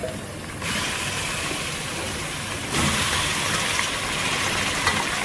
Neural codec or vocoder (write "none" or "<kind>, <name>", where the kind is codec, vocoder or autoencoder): none